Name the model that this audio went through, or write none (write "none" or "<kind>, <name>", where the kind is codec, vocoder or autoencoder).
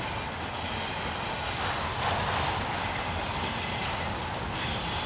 none